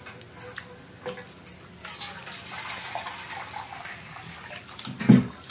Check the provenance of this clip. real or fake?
real